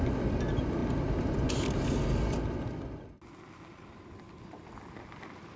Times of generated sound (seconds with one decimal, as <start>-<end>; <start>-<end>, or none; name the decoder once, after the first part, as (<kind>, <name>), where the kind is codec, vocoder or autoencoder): none